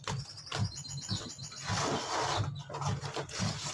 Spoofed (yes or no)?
no